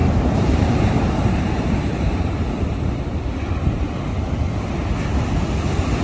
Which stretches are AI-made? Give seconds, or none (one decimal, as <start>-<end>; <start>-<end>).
0.0-2.8; 3.4-4.8